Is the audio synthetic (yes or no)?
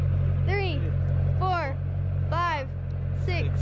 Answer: no